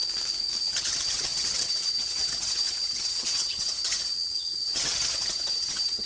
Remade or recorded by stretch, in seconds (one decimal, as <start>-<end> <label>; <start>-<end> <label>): 0.0-0.6 recorded; 0.6-6.1 remade